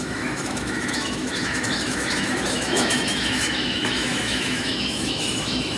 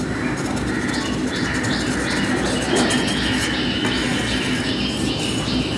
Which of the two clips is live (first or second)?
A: second